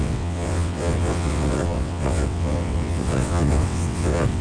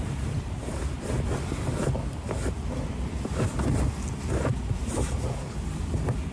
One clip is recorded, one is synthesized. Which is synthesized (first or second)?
first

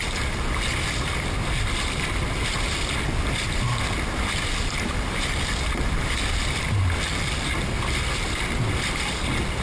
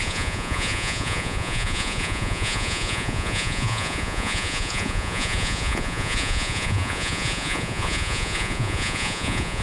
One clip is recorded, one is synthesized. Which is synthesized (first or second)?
second